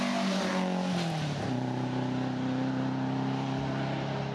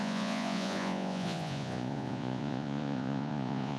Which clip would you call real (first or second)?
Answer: first